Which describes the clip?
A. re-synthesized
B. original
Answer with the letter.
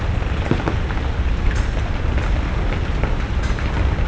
B